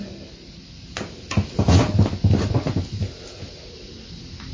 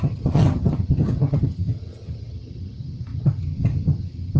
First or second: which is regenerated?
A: second